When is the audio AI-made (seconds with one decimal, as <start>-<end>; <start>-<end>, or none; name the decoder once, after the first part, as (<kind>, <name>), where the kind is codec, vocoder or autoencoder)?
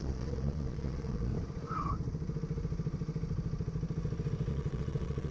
0.0-1.3 (vocoder, Vocos); 4.5-5.3